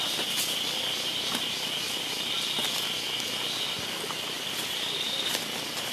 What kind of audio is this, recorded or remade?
recorded